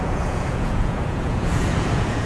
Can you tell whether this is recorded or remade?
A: remade